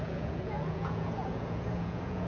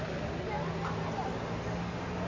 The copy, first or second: first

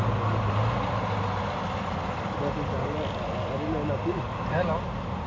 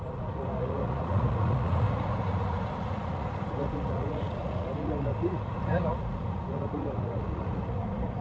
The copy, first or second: second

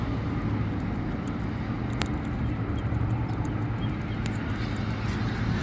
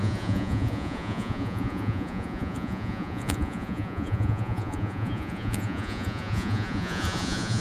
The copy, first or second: second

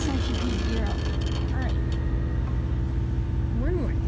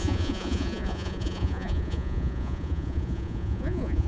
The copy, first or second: second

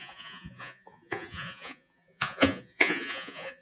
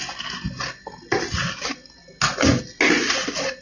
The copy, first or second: first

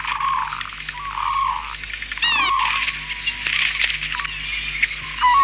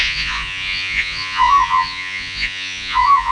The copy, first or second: second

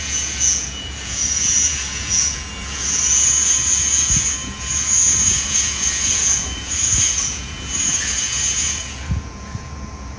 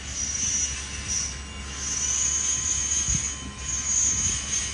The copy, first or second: first